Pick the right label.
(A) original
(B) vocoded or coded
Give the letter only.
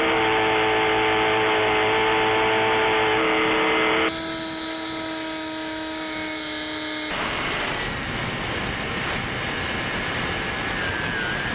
A